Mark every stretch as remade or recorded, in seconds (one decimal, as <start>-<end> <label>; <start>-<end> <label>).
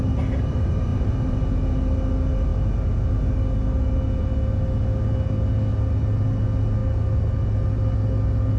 0.0-0.9 recorded; 0.9-1.4 remade; 1.4-8.6 recorded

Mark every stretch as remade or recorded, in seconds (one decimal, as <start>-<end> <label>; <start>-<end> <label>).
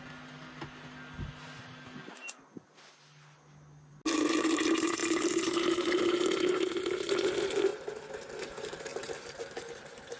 0.0-10.2 recorded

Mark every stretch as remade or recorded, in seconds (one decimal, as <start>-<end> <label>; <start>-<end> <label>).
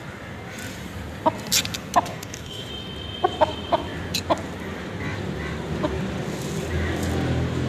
0.0-2.1 recorded; 2.1-2.7 remade; 2.7-7.7 recorded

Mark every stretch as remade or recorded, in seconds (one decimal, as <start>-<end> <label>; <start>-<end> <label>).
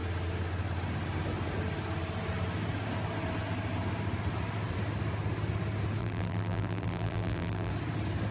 0.0-6.0 recorded; 6.0-7.7 remade; 7.7-8.3 recorded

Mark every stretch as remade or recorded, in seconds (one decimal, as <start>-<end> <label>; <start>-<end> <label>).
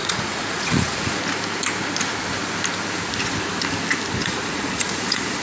0.0-1.2 remade; 1.2-4.2 recorded; 4.2-5.4 remade